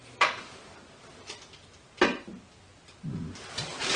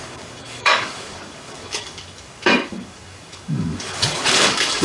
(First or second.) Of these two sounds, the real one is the first